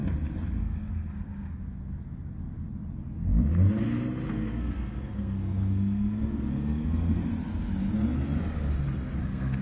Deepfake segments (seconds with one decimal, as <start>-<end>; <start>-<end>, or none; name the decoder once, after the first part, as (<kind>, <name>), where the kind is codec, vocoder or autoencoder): 0.6-1.6 (codec, SNAC); 4.3-7.2; 9.2-9.6

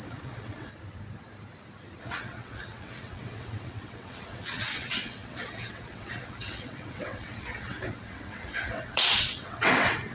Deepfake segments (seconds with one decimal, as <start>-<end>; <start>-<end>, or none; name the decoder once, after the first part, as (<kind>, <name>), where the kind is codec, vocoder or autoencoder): 0.0-0.7 (vocoder, WaveNeXt); 2.0-10.1

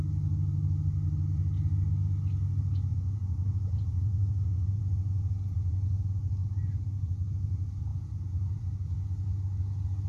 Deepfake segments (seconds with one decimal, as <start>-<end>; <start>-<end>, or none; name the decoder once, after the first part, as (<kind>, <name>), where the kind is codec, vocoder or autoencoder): 2.9-4.8 (vocoder, Vocos); 7.9-8.6

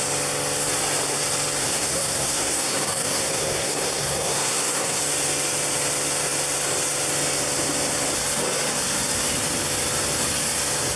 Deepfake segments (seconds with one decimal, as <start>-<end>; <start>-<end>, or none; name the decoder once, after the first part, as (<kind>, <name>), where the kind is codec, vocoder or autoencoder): 1.6-5.0 (codec, SNAC)

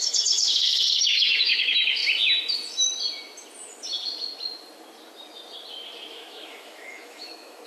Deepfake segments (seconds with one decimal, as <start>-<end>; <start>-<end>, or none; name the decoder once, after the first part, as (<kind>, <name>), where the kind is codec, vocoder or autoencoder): 0.0-2.0 (autoencoder, DAC-VAE); 6.1-7.7

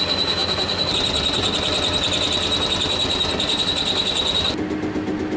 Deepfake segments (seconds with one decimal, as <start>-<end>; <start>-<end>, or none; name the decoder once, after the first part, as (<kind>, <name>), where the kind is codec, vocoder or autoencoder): none

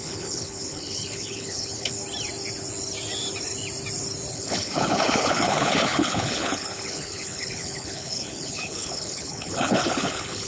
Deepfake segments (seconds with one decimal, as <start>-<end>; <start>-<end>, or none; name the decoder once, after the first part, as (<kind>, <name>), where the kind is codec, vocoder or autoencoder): 0.0-2.0 (codec, HILCodec); 4.3-10.5